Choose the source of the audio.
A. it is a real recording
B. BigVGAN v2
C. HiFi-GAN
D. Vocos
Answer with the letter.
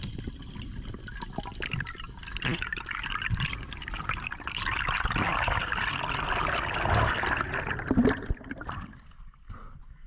A